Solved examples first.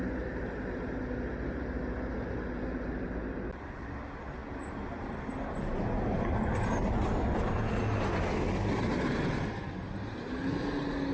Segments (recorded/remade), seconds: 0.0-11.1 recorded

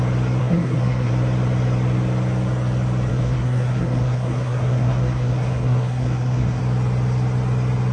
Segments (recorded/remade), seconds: 0.0-0.4 recorded; 0.4-1.1 remade; 1.1-3.1 recorded; 3.1-6.6 remade; 6.6-7.9 recorded

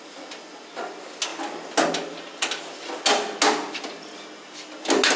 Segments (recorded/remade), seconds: 0.0-5.2 recorded

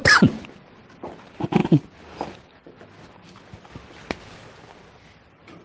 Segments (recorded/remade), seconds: 0.0-5.6 recorded

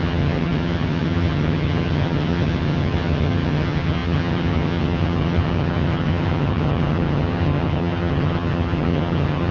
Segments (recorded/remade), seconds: 0.0-9.5 remade

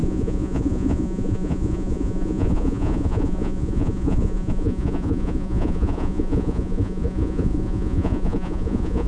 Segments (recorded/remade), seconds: 0.0-9.1 remade

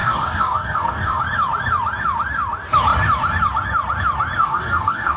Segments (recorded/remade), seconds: 0.0-1.2 remade; 1.2-4.4 recorded; 4.4-5.2 remade